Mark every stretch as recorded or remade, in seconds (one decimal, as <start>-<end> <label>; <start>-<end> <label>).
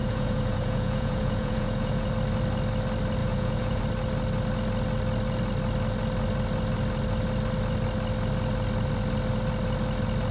0.0-2.1 remade; 2.1-3.2 recorded; 3.2-3.8 remade; 3.8-10.3 recorded